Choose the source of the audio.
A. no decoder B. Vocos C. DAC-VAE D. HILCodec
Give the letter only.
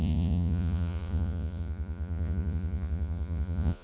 B